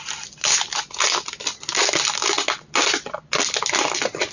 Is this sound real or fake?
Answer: real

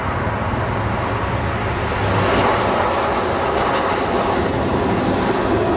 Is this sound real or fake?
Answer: real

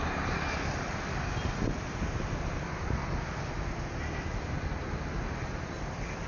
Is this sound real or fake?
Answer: real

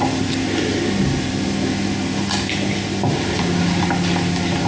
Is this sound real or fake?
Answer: real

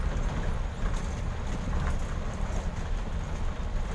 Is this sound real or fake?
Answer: real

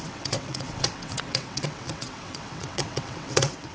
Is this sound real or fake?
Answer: fake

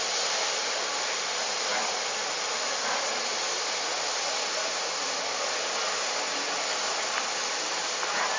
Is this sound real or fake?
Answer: real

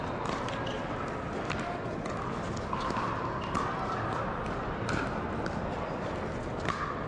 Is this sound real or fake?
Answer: real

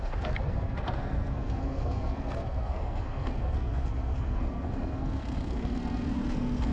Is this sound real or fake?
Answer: fake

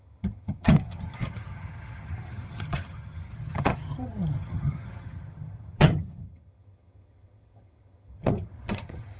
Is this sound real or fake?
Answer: fake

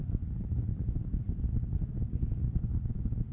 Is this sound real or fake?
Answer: real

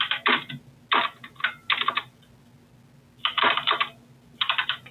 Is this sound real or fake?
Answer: real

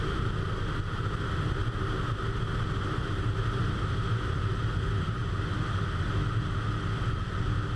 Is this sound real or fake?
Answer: real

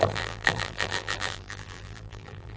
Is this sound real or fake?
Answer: fake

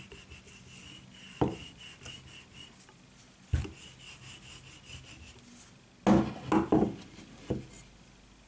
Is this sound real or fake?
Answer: real